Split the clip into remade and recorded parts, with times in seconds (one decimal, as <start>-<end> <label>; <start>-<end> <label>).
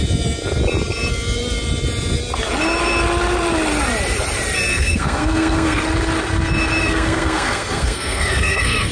0.0-4.7 recorded; 4.7-5.8 remade; 5.8-6.8 recorded; 6.8-8.9 remade